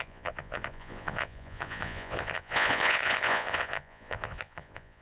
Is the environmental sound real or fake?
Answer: fake